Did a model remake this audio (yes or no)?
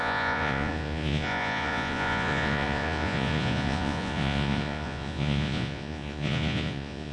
yes